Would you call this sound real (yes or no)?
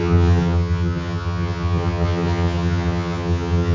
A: no